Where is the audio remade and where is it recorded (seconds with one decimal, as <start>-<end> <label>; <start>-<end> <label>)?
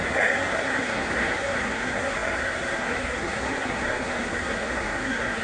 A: 0.0-5.4 remade